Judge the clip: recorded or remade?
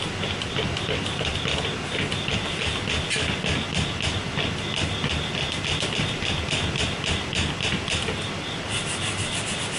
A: recorded